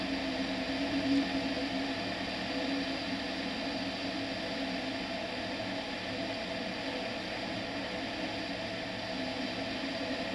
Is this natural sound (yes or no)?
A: yes